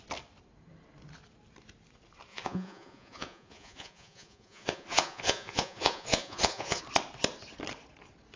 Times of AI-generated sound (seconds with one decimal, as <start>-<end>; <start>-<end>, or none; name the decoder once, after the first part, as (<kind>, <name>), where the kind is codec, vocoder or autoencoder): 2.3-6.8 (vocoder, Vocos)